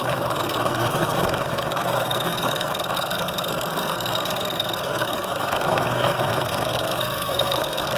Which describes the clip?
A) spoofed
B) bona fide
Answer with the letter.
A